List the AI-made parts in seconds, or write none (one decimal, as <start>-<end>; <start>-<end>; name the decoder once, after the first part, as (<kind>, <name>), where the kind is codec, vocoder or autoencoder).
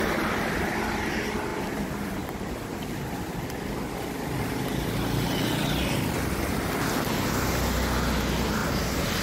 none